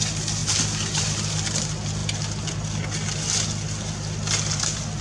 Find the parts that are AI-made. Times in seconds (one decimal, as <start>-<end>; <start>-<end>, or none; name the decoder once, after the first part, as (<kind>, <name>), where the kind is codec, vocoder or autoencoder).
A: none